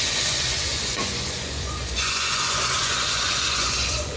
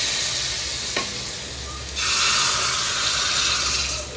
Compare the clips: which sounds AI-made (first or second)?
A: first